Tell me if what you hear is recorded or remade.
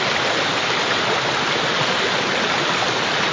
recorded